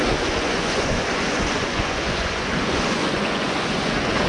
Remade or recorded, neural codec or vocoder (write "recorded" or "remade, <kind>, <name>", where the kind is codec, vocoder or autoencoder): remade, vocoder, Vocos